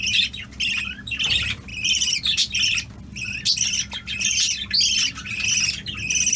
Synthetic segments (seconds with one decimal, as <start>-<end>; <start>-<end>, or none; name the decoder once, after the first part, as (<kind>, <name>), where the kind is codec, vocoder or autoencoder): none